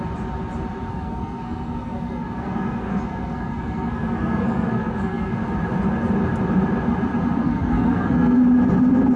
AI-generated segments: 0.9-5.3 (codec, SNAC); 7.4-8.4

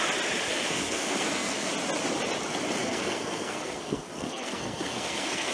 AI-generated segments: 0.5-1.7 (codec, SNAC); 2.8-5.5

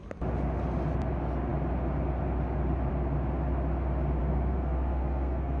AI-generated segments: 4.2-5.6 (codec, SNAC)

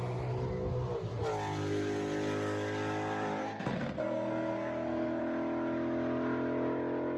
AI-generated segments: 3.4-5.2 (codec, SNAC)